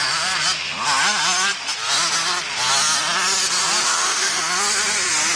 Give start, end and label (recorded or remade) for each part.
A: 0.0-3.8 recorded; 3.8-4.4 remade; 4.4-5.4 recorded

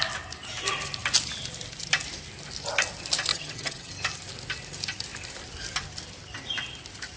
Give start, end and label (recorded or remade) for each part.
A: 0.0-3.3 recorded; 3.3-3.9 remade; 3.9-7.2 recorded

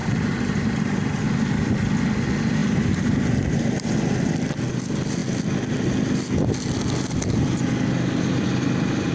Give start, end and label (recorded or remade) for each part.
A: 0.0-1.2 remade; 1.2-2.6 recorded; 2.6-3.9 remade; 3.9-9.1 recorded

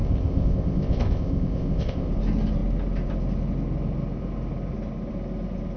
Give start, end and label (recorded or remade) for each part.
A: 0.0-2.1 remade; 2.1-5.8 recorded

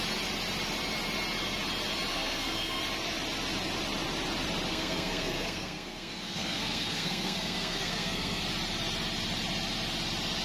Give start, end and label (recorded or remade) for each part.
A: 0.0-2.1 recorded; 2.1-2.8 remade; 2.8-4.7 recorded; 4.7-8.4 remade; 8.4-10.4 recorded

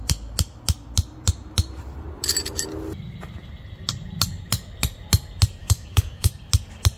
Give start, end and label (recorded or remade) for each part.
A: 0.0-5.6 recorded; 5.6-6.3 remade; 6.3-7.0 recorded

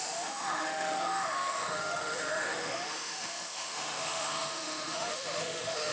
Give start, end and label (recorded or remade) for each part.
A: 0.0-5.9 remade

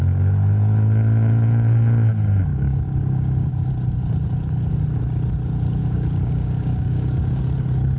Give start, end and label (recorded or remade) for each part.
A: 0.0-2.5 recorded; 2.5-3.7 remade; 3.7-5.8 recorded; 5.8-7.4 remade; 7.4-8.0 recorded